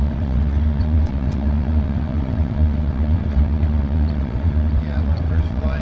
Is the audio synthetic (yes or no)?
yes